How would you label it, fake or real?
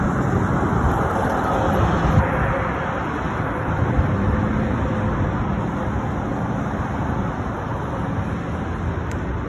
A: real